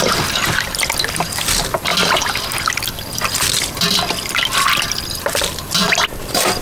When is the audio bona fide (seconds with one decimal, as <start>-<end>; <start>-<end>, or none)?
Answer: 0.0-6.6